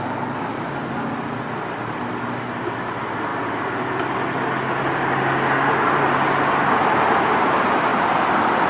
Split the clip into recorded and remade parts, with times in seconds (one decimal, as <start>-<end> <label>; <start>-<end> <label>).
0.0-8.7 recorded